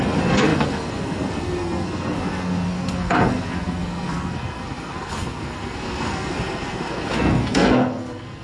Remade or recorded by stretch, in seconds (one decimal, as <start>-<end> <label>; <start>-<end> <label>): 0.0-8.4 remade